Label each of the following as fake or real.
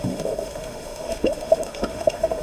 fake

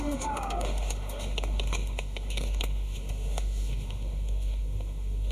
fake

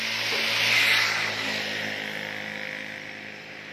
real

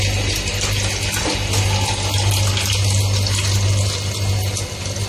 real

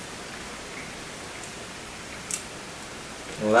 real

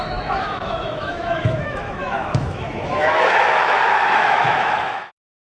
fake